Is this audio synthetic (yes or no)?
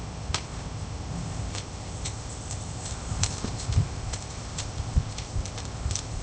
yes